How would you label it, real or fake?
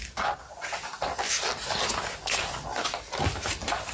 real